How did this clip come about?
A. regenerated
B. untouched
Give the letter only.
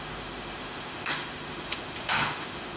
A